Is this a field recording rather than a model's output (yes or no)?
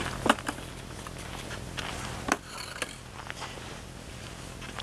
yes